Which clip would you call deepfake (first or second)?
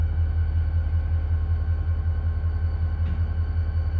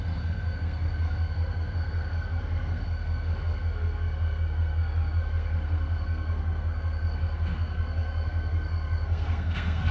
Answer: second